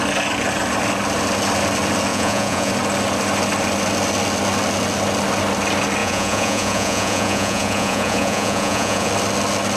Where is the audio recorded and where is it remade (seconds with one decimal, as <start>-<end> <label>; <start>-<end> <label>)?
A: 0.0-2.1 recorded; 2.1-2.7 remade; 2.7-6.0 recorded; 6.0-9.1 remade; 9.1-9.8 recorded